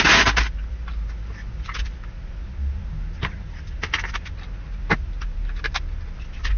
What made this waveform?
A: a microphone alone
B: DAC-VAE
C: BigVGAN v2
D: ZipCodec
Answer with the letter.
A